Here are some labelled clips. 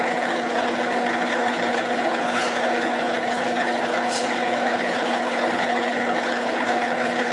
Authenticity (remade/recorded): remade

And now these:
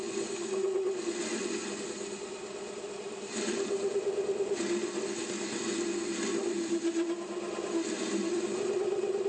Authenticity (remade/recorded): recorded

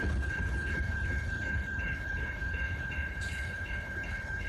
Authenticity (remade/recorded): remade